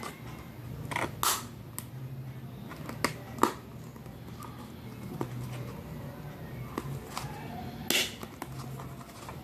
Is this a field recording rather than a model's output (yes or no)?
yes